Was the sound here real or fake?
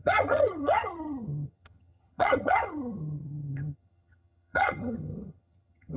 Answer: fake